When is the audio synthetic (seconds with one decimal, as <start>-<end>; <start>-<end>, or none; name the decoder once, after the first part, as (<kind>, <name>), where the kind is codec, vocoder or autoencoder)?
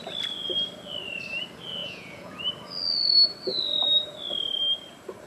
1.8-2.4 (vocoder, Vocos)